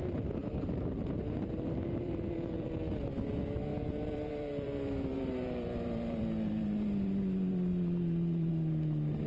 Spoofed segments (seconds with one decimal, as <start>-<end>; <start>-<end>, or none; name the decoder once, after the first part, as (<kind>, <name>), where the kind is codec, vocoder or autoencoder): 0.4-2.7 (vocoder, BigVGAN v2); 3.7-8.5